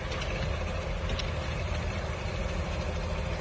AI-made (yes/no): no